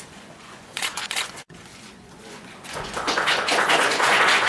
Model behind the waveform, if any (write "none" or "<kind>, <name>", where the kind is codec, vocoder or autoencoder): vocoder, Vocos